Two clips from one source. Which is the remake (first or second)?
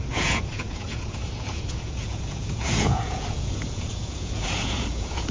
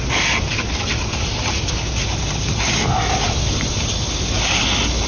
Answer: first